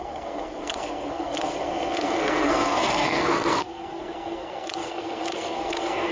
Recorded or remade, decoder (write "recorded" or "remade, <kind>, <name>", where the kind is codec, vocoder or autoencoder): remade, codec, SNAC